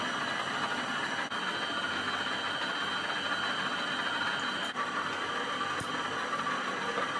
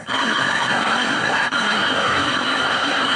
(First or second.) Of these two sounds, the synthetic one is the second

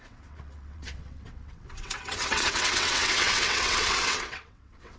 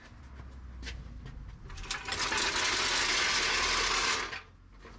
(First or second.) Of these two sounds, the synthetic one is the first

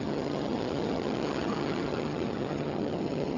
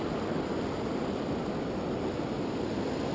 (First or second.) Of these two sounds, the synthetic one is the first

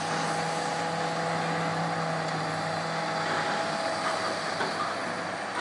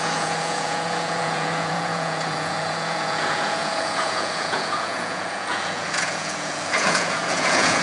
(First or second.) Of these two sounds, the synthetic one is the second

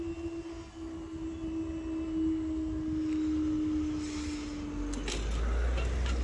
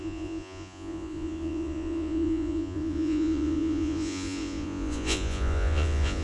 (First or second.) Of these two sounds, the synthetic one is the second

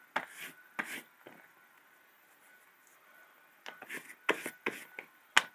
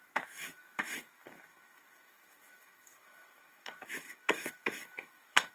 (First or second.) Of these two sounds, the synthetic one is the second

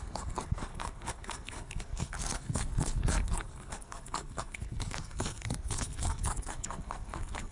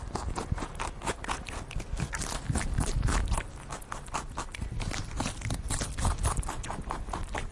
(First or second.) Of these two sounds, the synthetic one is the first